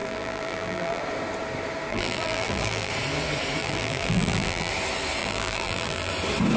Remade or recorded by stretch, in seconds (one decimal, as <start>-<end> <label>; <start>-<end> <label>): 0.0-1.0 remade; 1.0-1.9 recorded; 1.9-2.9 remade; 2.9-3.6 recorded; 3.6-4.7 remade; 4.7-5.2 recorded; 5.2-6.1 remade; 6.1-6.6 recorded